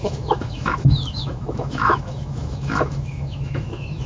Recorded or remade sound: remade